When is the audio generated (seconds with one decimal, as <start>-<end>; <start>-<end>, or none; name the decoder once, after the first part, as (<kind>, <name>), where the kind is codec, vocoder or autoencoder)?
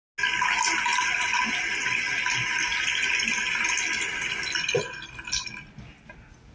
none